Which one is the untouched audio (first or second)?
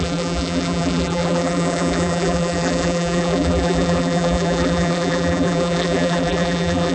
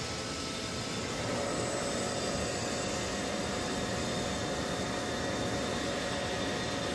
second